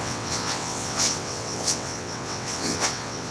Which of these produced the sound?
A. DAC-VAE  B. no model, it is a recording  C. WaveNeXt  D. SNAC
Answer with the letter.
C